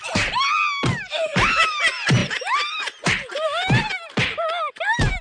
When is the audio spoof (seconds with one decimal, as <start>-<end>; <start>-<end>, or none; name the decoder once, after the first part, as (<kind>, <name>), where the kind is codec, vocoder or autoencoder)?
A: 1.3-1.8 (vocoder, BigVGAN v2); 2.2-4.2